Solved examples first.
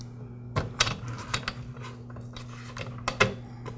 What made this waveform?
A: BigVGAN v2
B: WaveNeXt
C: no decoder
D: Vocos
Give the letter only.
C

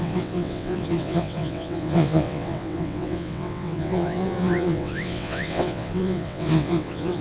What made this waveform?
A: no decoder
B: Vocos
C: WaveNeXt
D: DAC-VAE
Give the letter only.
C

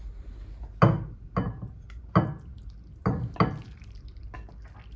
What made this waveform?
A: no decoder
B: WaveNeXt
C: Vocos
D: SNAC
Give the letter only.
A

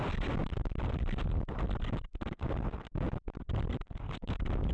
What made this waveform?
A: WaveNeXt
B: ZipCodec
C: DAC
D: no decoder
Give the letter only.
D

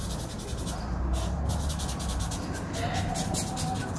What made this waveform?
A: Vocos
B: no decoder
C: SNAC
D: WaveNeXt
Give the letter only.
B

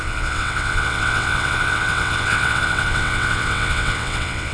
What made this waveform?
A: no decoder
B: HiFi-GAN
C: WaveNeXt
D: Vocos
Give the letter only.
C